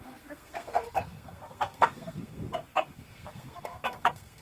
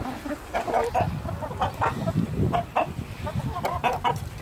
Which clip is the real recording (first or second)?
second